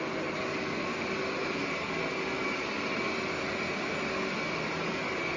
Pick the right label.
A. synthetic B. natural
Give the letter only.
B